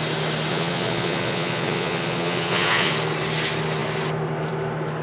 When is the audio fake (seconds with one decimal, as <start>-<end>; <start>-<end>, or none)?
0.5-2.9